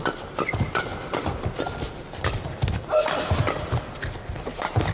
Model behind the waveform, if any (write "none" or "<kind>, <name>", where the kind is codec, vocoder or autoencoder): vocoder, BigVGAN v2